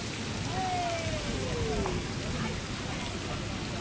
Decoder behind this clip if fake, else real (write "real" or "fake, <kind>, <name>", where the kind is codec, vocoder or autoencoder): real